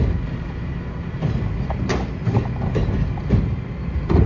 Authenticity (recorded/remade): recorded